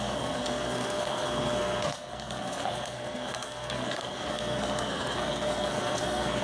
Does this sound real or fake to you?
fake